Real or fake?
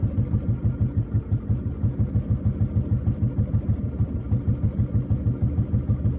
real